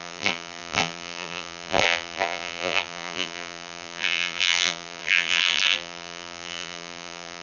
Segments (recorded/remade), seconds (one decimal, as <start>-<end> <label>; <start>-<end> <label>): 0.0-7.4 remade